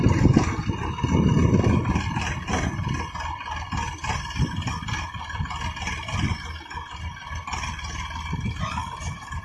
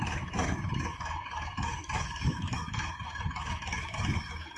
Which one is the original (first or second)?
first